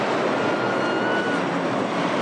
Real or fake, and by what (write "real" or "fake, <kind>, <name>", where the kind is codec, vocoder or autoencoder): real